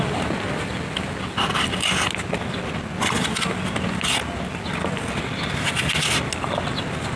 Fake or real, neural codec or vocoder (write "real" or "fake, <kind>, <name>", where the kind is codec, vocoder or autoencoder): real